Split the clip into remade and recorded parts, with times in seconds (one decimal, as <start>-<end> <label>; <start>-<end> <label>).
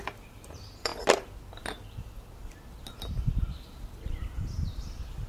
0.0-0.9 remade; 0.9-4.1 recorded; 4.1-5.3 remade